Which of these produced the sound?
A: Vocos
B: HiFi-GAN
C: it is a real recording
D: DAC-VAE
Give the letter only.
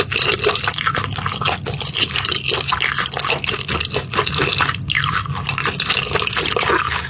C